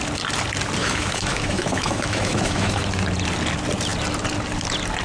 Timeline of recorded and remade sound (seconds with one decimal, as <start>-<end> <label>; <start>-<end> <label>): 0.0-0.8 recorded; 0.8-2.8 remade; 2.8-5.0 recorded